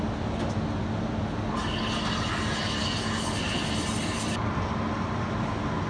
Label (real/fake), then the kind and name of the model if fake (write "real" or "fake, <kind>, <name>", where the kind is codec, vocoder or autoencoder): real